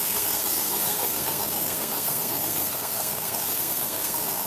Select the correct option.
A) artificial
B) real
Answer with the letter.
A